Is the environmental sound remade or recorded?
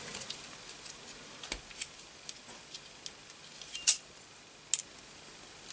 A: recorded